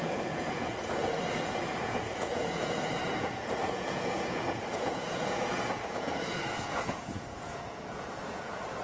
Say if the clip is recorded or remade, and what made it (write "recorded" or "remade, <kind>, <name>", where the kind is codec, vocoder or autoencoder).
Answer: remade, vocoder, Vocos